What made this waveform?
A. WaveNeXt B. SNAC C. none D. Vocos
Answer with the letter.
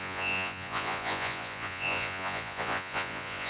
D